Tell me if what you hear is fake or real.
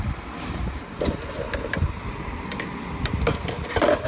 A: real